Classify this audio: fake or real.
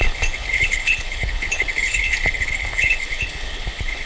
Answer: fake